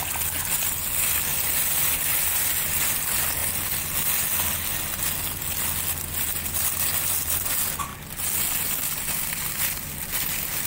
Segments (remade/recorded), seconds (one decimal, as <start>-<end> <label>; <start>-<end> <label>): 0.0-1.3 recorded; 1.3-2.8 remade; 2.8-6.3 recorded; 6.3-7.5 remade; 7.5-10.7 recorded